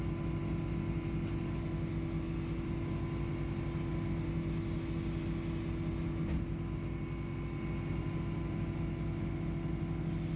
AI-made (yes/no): no